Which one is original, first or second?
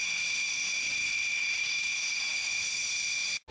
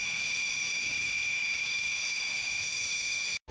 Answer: first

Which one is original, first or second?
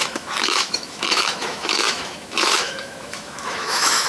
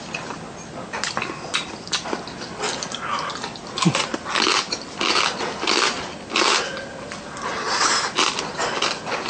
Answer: second